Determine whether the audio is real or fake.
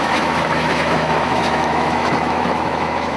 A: fake